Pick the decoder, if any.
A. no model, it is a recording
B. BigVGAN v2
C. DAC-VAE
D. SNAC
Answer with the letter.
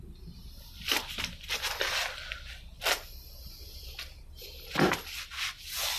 A